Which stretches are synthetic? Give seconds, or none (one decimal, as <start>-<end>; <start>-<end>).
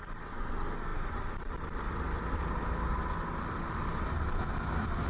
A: none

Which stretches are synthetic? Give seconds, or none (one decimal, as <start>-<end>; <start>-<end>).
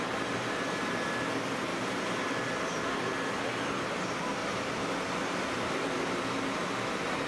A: 4.4-5.5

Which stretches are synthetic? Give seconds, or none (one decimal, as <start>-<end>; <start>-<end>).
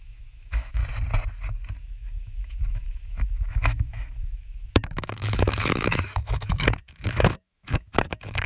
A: 0.0-0.8; 1.8-8.5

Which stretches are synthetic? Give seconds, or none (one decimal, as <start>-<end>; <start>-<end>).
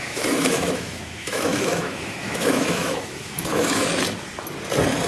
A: 0.0-3.9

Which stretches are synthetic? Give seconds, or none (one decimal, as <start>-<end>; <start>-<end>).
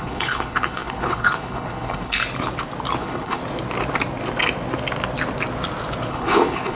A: 0.0-2.2; 3.0-3.4; 6.1-6.8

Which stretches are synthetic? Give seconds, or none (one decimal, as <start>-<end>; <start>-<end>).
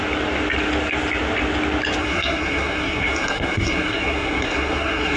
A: 2.0-5.2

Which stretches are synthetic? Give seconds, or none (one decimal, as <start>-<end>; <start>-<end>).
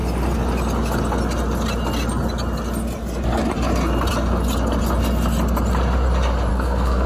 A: 6.5-7.1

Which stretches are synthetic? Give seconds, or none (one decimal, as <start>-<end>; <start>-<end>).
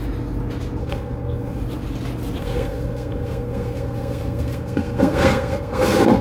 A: 0.8-1.6; 2.4-6.2